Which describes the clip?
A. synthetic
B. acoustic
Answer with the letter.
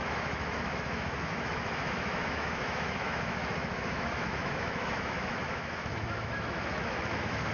A